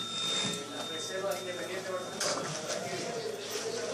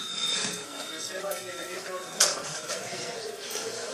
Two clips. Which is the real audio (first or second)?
first